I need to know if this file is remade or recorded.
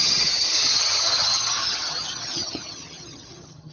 remade